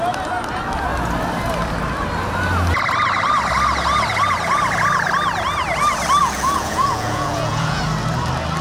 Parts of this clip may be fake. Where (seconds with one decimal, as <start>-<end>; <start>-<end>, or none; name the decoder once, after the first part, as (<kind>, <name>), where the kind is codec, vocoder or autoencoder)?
6.2-7.8 (vocoder, Vocos)

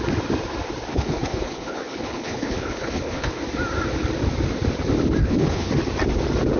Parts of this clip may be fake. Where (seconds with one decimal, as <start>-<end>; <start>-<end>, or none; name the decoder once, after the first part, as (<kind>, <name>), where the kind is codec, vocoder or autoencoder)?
0.9-3.4 (codec, HILCodec); 5.2-5.7

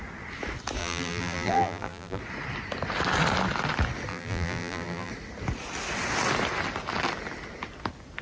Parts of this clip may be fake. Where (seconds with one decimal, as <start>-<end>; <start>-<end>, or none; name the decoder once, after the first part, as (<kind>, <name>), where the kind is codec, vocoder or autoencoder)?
0.8-2.2 (vocoder, BigVGAN v2); 4.1-5.1

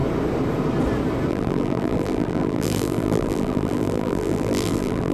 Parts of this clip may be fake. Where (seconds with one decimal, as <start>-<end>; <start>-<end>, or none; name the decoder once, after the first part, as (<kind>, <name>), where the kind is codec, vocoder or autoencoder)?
1.3-5.1 (vocoder, BigVGAN v2)